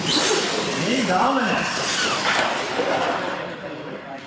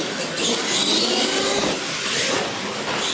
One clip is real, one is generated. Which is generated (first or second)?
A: first